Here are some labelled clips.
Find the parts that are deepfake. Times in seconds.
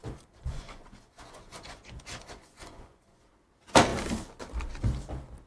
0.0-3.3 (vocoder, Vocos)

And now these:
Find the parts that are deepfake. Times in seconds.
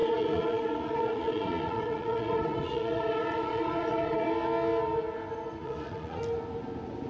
0.0-4.3 (vocoder, Vocos); 5.6-6.2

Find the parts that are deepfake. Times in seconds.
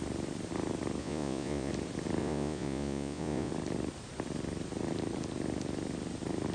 1.0-1.7 (vocoder, Vocos); 2.2-3.5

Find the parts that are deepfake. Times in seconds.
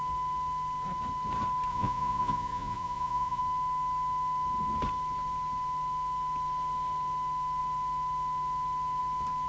1.7-3.4 (vocoder, Vocos)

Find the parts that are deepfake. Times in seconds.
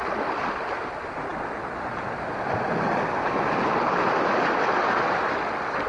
none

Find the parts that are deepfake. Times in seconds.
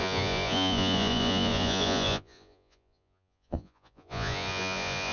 0.0-5.1 (vocoder, Vocos)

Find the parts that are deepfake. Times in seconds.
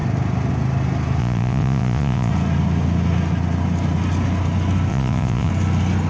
1.2-2.3 (vocoder, Vocos); 4.9-5.5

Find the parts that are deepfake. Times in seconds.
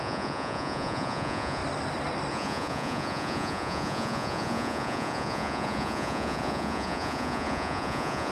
0.0-1.6 (vocoder, Vocos); 2.3-8.3